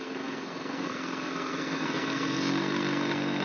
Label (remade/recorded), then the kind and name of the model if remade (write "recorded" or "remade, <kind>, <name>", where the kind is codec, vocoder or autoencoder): remade, codec, SNAC